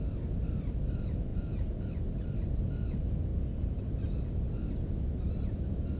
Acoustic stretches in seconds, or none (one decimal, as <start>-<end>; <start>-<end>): 0.0-1.3; 1.9-3.3; 3.8-6.0